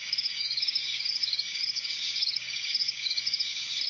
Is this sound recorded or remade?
remade